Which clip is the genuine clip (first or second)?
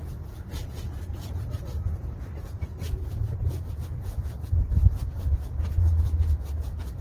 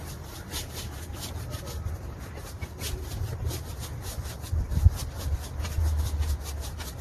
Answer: second